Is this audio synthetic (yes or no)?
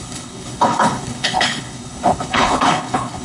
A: yes